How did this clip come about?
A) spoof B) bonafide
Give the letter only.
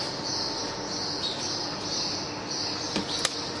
B